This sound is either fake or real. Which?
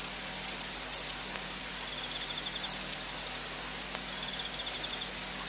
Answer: real